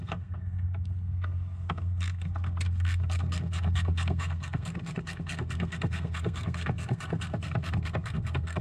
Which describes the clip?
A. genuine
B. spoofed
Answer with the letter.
B